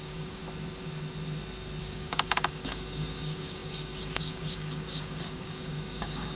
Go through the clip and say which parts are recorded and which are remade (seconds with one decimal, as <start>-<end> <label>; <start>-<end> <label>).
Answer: 0.0-0.4 remade; 0.4-1.8 recorded; 1.8-6.4 remade